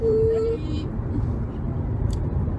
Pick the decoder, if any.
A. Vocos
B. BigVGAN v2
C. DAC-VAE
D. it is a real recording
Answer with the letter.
B